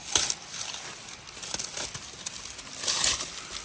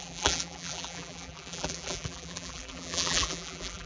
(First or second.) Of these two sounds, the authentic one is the first